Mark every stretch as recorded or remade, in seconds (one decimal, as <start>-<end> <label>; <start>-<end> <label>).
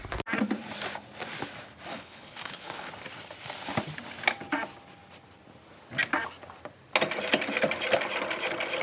0.0-1.9 recorded; 1.9-2.9 remade; 2.9-8.8 recorded